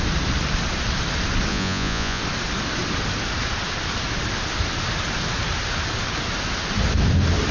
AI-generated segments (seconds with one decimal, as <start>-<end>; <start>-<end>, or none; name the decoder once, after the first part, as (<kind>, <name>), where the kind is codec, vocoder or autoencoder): 1.5-2.2 (vocoder, Vocos)